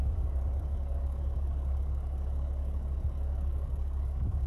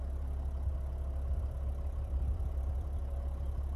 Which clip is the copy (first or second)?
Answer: first